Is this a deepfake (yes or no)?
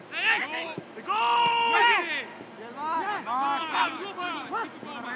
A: no